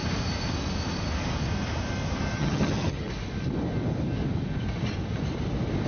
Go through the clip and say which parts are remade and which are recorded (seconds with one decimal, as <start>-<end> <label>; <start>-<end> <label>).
0.0-2.3 recorded; 2.3-3.1 remade; 3.1-5.9 recorded